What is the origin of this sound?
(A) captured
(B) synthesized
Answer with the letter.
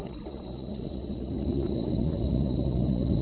B